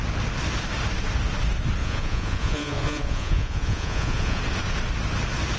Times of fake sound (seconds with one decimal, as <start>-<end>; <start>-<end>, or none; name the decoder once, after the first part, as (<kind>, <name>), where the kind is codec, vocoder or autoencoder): 1.8-4.4 (vocoder, Vocos)